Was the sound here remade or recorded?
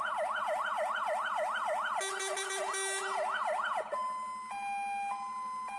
recorded